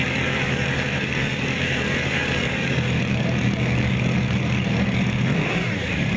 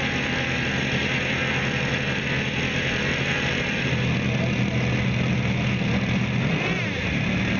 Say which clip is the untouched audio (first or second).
second